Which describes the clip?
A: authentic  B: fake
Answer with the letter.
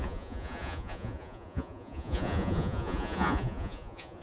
B